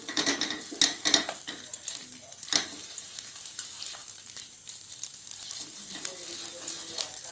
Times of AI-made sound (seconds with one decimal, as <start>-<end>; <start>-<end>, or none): none